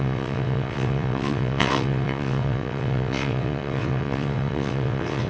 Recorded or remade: remade